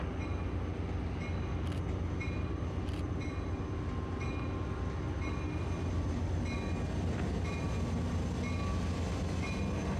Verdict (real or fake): real